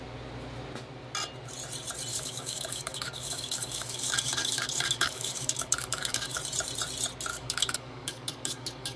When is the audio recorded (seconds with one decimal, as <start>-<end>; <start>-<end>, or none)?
0.0-2.1; 6.4-7.3